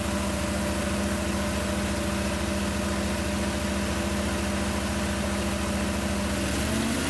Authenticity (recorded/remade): recorded